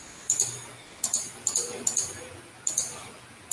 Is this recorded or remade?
recorded